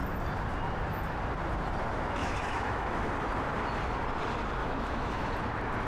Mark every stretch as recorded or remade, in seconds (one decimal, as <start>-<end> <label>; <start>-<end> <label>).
0.0-2.2 recorded; 2.2-3.1 remade; 3.1-4.6 recorded; 4.6-5.3 remade; 5.3-5.9 recorded